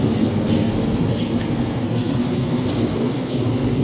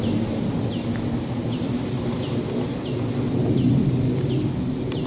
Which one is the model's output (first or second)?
first